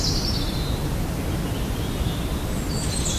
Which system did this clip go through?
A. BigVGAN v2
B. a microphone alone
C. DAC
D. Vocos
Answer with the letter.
B